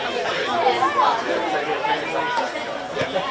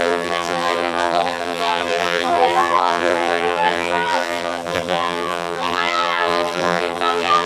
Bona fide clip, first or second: first